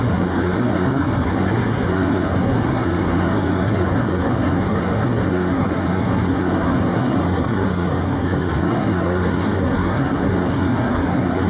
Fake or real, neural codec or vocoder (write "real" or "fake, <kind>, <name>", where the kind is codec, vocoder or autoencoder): fake, codec, SNAC